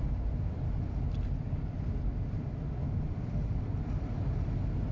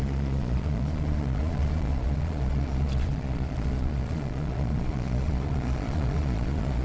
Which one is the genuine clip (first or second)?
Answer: first